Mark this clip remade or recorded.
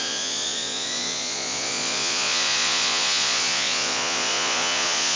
remade